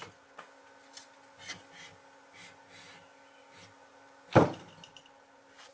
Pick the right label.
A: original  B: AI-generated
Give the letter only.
A